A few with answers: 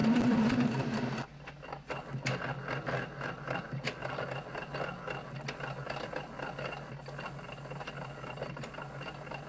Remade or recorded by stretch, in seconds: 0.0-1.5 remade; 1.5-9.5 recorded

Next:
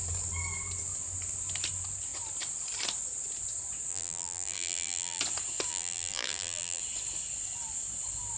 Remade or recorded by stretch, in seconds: 0.0-3.9 recorded; 3.9-5.2 remade; 5.2-5.7 recorded; 5.7-6.8 remade; 6.8-8.4 recorded

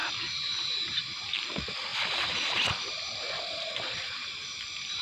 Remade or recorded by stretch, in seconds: 0.0-5.0 recorded

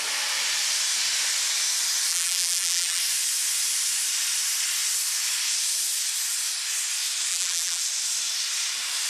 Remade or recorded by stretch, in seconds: 0.0-2.1 recorded; 2.1-3.0 remade; 3.0-7.3 recorded; 7.3-7.8 remade; 7.8-9.1 recorded

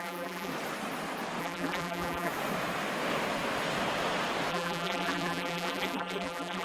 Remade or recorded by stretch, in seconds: 0.0-0.5 remade; 0.5-1.4 recorded; 1.4-2.3 remade; 2.3-4.5 recorded; 4.5-6.6 remade